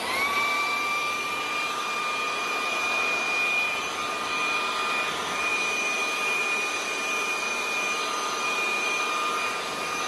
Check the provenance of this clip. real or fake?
fake